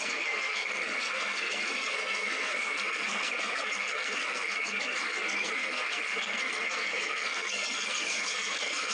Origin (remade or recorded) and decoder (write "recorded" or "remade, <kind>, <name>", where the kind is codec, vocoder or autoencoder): remade, codec, SNAC